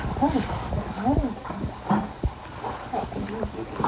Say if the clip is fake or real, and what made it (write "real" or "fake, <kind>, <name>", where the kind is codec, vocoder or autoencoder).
fake, codec, DAC